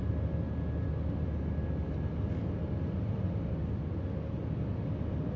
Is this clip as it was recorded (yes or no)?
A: yes